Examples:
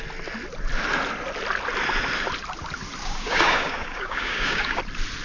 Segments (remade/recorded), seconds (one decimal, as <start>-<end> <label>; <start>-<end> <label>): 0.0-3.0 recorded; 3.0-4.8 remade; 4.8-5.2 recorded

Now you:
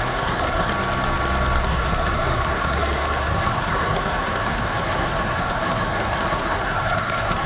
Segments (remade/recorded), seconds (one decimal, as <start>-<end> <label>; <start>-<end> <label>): 0.0-0.7 remade; 0.7-1.6 recorded; 1.6-7.5 remade

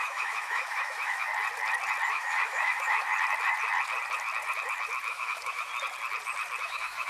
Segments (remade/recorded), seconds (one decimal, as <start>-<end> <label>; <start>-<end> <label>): 0.0-1.3 remade; 1.3-2.1 recorded; 2.1-3.1 remade; 3.1-5.1 recorded; 5.1-5.7 remade; 5.7-6.6 recorded; 6.6-7.1 remade